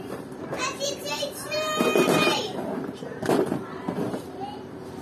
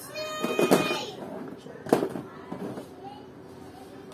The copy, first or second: first